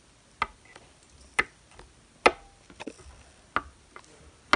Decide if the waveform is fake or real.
real